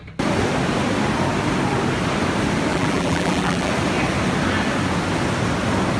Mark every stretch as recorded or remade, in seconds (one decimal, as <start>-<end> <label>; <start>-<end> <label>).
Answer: 0.0-2.7 recorded; 2.7-3.7 remade; 3.7-6.0 recorded